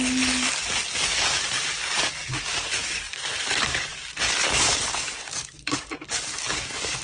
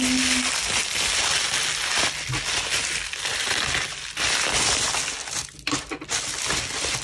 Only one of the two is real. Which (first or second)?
second